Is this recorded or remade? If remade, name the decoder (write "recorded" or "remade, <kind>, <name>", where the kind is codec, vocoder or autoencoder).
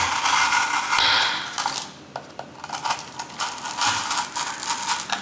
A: recorded